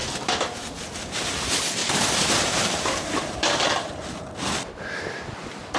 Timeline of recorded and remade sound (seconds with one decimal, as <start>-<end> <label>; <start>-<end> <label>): 0.0-1.8 recorded; 1.8-4.3 remade; 4.3-5.8 recorded